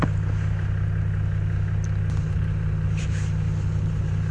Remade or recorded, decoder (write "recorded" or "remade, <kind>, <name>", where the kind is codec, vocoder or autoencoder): recorded